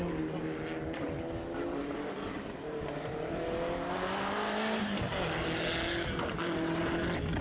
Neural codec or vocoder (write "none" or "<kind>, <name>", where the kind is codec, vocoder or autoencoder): none